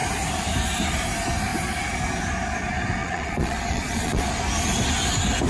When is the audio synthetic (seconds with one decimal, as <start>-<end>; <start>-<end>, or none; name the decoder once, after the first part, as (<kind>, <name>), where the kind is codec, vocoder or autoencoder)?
3.0-4.3 (vocoder, Vocos)